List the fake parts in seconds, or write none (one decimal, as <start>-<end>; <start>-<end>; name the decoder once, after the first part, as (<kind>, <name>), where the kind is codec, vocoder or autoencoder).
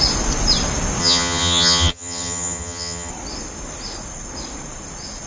1.0-3.1 (vocoder, HiFi-GAN)